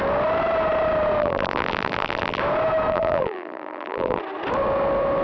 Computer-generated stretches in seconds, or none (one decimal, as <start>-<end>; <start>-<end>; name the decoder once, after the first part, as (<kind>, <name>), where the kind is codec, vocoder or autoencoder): 1.2-2.4 (vocoder, BigVGAN v2); 2.9-4.2